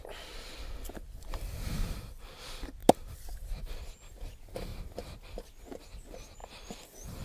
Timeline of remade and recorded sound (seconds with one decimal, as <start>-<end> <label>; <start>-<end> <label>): 0.0-7.2 recorded